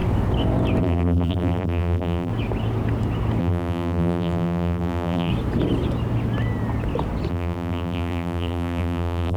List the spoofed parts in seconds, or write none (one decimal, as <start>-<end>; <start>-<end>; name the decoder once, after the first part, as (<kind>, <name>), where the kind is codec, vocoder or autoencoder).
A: 0.8-2.3 (vocoder, BigVGAN v2); 3.4-5.3; 7.3-9.4